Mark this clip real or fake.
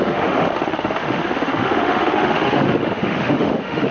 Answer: fake